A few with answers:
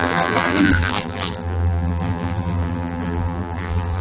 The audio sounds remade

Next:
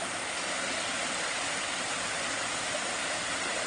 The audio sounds recorded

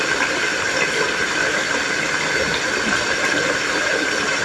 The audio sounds recorded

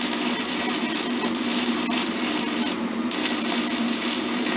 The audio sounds recorded